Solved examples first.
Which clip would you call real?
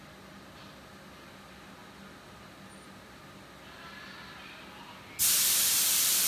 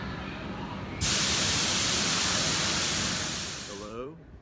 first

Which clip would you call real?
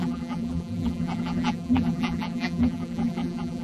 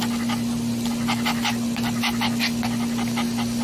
second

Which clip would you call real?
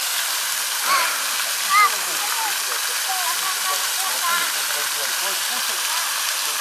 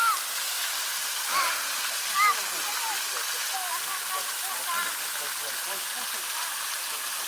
first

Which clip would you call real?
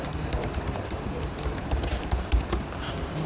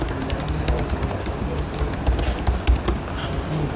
second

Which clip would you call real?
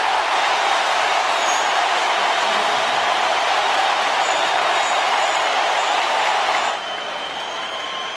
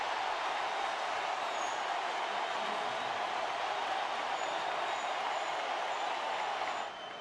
second